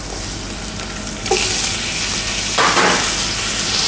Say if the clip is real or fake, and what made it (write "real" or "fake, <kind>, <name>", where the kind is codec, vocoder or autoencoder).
real